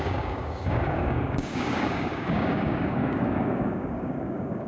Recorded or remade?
remade